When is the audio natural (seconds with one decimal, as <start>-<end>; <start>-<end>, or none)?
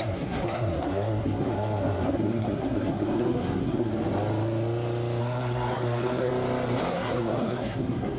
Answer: 3.9-5.2; 6.3-6.9